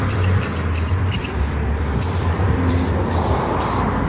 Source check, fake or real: fake